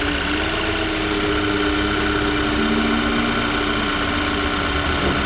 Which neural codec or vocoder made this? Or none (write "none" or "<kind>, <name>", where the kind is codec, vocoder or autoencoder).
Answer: none